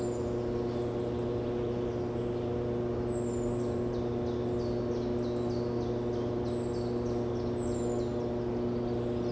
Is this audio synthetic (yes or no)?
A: no